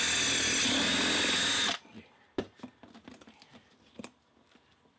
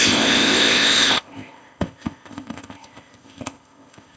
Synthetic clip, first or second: second